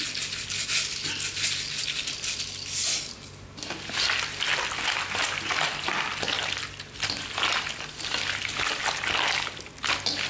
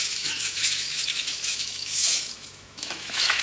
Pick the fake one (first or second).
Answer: second